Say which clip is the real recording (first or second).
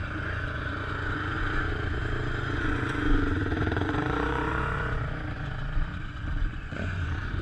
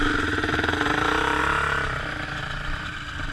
second